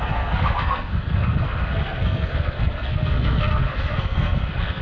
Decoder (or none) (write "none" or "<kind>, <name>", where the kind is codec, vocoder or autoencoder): codec, SNAC